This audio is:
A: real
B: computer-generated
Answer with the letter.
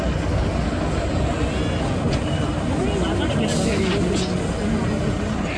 A